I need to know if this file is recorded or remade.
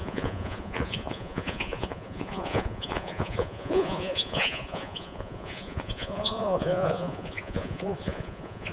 remade